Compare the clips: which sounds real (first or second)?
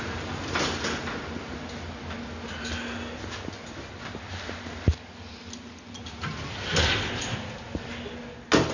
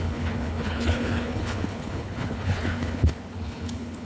first